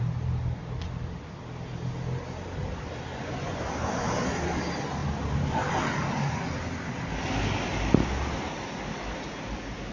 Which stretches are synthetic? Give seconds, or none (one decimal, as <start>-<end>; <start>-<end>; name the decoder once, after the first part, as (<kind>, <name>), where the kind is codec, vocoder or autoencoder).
3.1-3.6 (vocoder, Vocos)